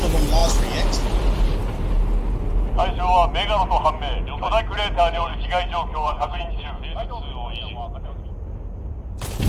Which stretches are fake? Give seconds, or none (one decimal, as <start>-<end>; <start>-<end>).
5.9-6.8